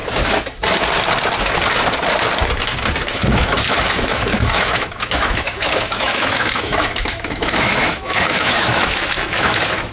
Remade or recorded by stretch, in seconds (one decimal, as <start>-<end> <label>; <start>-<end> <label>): 0.0-3.1 recorded; 3.1-9.9 remade